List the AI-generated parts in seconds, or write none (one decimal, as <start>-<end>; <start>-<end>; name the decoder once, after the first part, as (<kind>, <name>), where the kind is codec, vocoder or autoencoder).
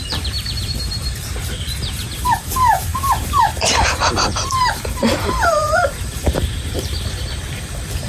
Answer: 0.0-8.1 (vocoder, BigVGAN v2)